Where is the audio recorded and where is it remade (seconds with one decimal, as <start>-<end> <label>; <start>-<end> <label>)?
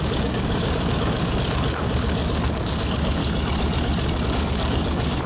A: 0.0-3.2 remade; 3.2-4.3 recorded; 4.3-5.3 remade